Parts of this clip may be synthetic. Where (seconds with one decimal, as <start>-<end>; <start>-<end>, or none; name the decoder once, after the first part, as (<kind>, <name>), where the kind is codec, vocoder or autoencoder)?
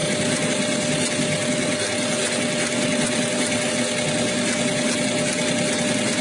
none